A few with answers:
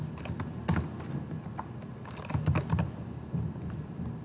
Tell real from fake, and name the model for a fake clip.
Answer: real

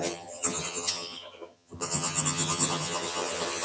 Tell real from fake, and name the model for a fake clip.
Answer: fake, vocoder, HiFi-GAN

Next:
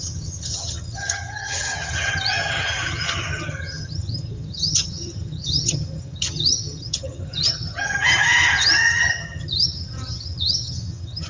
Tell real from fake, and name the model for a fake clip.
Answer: fake, vocoder, HiFi-GAN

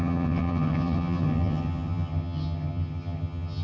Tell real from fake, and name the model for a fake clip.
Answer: fake, vocoder, HiFi-GAN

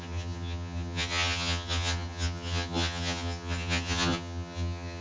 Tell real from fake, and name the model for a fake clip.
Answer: fake, vocoder, HiFi-GAN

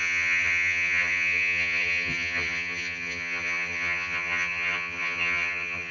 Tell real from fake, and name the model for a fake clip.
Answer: fake, vocoder, HiFi-GAN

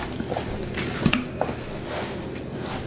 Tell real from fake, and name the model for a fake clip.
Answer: real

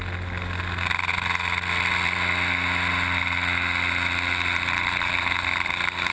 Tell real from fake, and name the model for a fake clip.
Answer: real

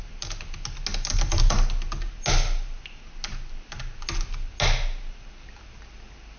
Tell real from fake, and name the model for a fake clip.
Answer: real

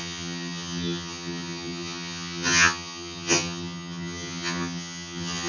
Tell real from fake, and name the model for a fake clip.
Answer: fake, vocoder, HiFi-GAN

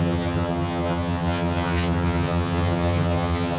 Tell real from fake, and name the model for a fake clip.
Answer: fake, vocoder, HiFi-GAN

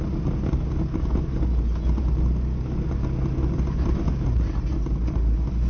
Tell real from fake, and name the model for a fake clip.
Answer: real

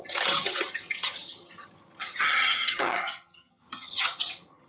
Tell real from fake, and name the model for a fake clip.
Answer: fake, vocoder, HiFi-GAN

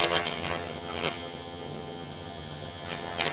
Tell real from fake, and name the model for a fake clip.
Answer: fake, vocoder, HiFi-GAN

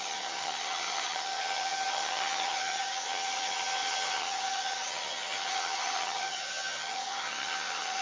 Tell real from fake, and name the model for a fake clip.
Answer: fake, vocoder, HiFi-GAN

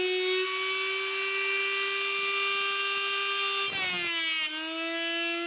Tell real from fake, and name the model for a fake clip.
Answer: real